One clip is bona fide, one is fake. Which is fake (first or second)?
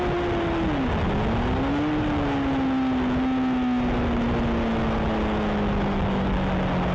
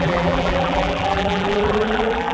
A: second